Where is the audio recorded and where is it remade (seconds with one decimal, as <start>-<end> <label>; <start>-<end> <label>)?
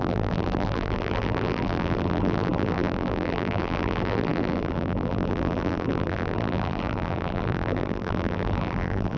0.0-9.2 remade